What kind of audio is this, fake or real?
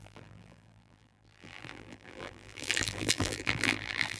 fake